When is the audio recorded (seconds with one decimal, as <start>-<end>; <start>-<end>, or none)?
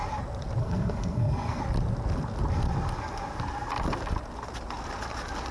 0.0-0.6; 1.6-5.5